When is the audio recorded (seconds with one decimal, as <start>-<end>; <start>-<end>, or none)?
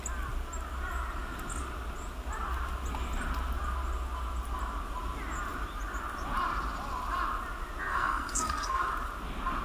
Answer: 0.0-7.9; 8.9-9.6